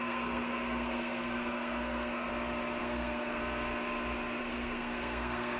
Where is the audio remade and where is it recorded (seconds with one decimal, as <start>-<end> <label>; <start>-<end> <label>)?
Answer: 0.0-2.3 remade; 2.3-2.8 recorded; 2.8-3.4 remade; 3.4-4.4 recorded; 4.4-5.6 remade